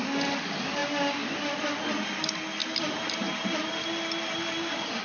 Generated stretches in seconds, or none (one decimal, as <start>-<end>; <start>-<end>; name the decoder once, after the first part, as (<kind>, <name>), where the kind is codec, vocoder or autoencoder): none